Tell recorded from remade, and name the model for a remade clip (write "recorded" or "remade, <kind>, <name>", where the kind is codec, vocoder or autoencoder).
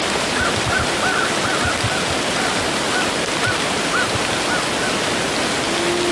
remade, vocoder, BigVGAN v2